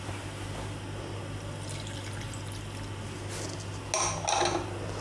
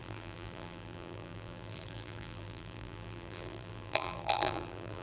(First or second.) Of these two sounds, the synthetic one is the second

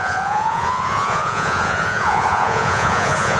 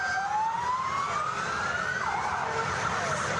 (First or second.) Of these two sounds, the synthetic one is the first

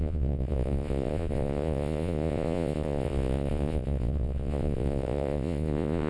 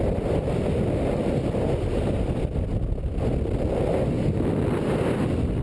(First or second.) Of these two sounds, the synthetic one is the first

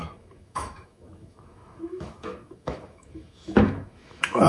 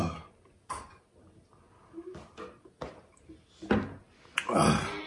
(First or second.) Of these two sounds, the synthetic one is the first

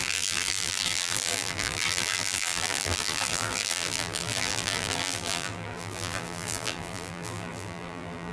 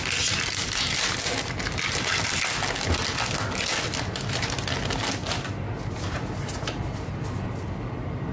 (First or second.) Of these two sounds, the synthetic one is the first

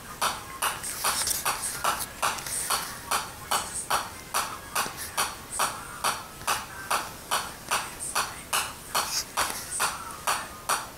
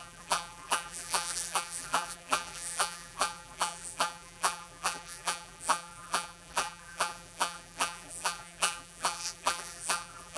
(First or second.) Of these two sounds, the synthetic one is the second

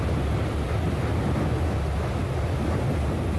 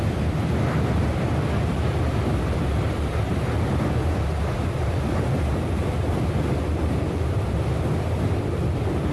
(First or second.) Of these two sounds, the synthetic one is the second